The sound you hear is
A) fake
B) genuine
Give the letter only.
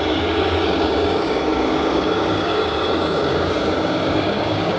A